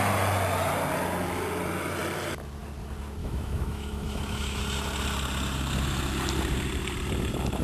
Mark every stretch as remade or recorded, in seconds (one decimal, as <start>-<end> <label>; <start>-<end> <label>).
0.0-3.2 recorded; 3.2-4.6 remade; 4.6-7.6 recorded